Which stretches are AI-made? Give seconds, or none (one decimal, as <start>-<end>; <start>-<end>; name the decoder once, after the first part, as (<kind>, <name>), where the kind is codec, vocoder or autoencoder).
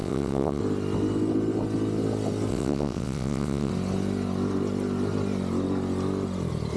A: 0.0-0.6 (vocoder, WaveNeXt); 2.5-3.7